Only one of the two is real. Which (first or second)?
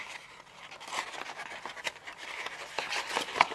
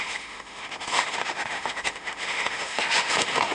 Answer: first